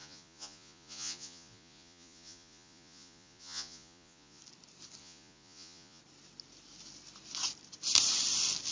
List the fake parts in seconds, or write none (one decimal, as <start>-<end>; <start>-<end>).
0.0-4.4; 5.0-6.0